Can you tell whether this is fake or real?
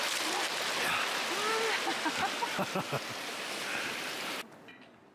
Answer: real